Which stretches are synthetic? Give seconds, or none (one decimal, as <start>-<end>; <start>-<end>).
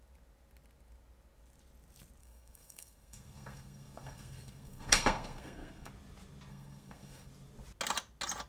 2.2-5.9; 6.5-7.3